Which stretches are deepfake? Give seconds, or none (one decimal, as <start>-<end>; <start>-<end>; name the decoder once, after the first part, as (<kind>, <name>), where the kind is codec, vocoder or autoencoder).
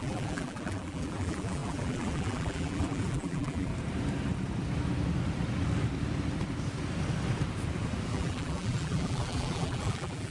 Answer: 0.0-3.7 (vocoder, BigVGAN v2); 8.1-10.3